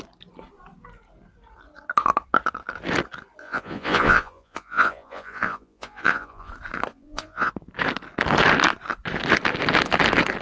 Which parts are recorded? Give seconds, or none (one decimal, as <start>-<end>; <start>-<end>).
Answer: 0.0-3.4; 6.5-6.9; 7.5-10.4